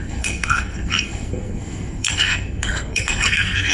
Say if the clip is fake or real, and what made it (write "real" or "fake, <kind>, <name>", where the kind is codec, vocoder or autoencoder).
fake, codec, SNAC